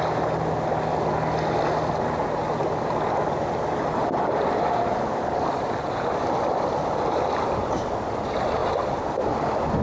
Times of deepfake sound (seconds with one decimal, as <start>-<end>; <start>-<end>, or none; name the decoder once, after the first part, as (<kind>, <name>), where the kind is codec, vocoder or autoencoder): none